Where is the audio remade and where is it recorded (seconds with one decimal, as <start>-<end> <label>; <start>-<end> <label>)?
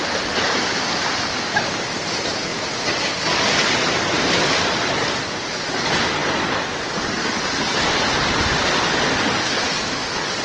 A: 0.0-10.4 recorded